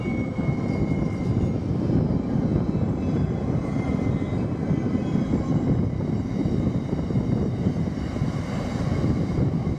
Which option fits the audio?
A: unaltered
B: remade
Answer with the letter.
A